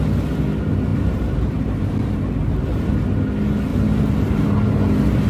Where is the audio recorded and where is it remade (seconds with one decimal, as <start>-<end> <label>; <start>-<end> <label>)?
0.0-0.9 recorded; 0.9-2.9 remade; 2.9-3.7 recorded; 3.7-4.5 remade; 4.5-5.3 recorded